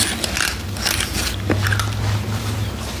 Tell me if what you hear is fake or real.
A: real